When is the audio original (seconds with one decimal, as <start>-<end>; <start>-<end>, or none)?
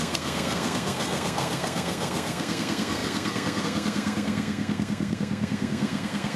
none